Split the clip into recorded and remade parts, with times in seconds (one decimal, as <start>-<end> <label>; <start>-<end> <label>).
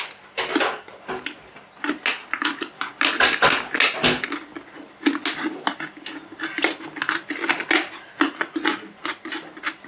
0.0-9.9 recorded